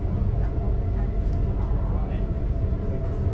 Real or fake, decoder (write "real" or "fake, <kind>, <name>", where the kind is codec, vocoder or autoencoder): real